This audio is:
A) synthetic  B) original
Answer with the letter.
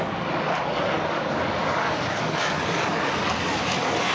A